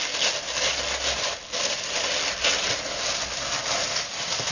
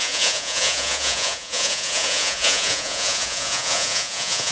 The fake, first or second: second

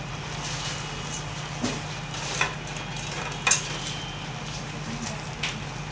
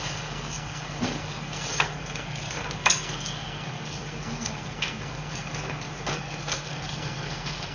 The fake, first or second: second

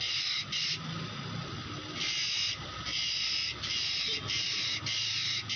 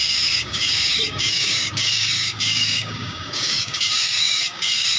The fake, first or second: second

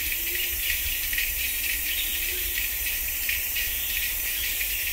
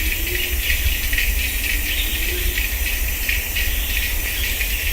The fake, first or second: first